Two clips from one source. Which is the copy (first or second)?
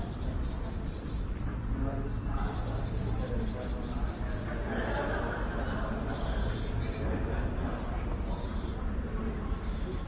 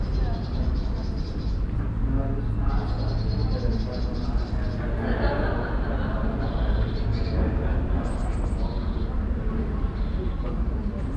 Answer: first